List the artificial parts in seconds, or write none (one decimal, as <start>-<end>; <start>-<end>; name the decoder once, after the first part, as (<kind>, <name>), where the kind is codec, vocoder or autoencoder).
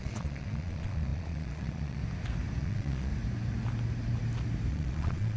0.0-2.0 (vocoder, Vocos); 2.6-3.1; 4.7-5.4